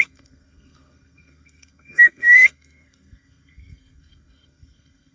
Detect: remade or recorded remade